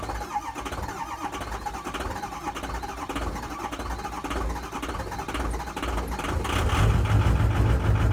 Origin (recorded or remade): recorded